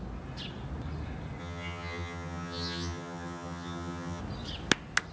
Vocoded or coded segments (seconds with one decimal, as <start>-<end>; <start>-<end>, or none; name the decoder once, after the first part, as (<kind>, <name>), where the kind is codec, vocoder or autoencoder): 1.4-4.2 (vocoder, HiFi-GAN)

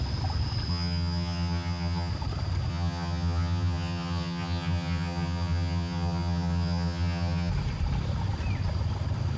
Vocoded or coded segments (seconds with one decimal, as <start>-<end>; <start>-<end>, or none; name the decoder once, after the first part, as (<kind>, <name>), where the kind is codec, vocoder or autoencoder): 0.7-2.1 (vocoder, HiFi-GAN); 2.7-7.5